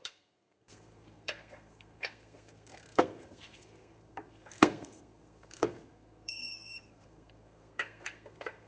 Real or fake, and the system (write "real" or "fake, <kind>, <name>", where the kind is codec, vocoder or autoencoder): fake, codec, SNAC